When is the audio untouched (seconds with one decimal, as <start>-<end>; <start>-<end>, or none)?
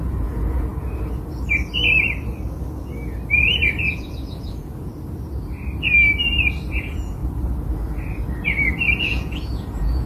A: 0.7-3.8; 4.9-6.7; 7.2-9.0